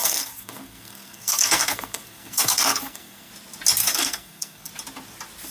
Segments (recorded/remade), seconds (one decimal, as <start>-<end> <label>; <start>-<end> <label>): 0.0-3.3 remade; 3.3-3.8 recorded; 3.8-4.7 remade; 4.7-5.5 recorded